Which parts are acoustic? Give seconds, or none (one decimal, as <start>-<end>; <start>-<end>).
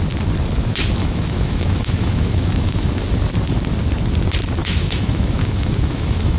0.0-1.0; 3.0-4.6